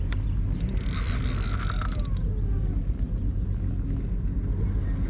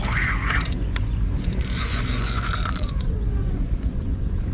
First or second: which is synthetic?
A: second